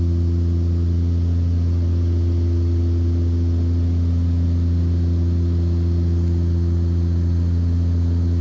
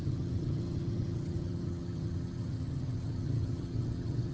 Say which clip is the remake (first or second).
second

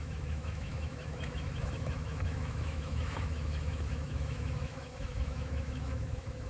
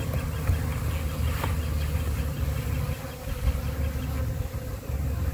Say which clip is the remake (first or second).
first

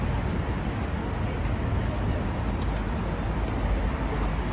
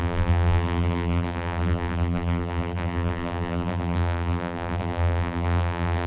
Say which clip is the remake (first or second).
second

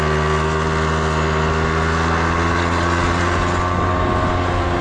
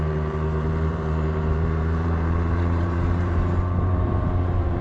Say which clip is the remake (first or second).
second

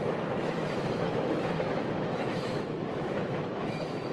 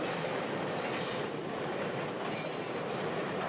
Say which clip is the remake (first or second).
first